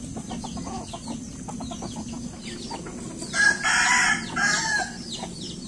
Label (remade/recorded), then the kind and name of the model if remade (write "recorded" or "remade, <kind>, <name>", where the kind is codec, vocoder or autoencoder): recorded